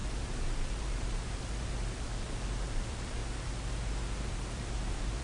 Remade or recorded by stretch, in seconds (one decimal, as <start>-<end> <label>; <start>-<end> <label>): 0.0-3.2 remade; 3.2-4.3 recorded; 4.3-5.2 remade